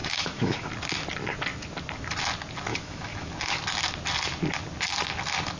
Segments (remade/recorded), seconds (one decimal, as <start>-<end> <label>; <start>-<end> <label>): 0.0-0.7 remade; 0.7-2.7 recorded; 2.7-3.3 remade; 3.3-5.6 recorded